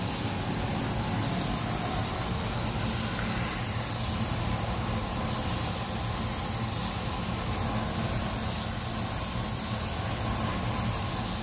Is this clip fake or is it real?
real